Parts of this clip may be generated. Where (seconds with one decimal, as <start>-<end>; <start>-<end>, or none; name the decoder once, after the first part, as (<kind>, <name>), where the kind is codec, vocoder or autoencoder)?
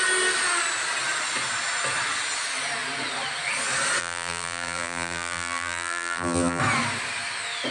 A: 4.0-6.6 (vocoder, BigVGAN v2)